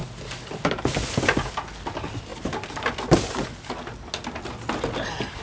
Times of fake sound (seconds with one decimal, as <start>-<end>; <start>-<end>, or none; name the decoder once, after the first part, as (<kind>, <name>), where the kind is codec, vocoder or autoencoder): none